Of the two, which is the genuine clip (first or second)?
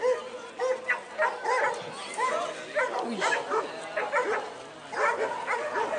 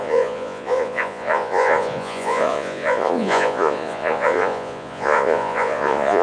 first